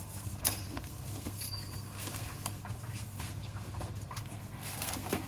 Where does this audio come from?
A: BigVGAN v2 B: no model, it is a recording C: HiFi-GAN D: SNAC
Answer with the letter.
D